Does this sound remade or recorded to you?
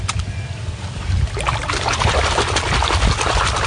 remade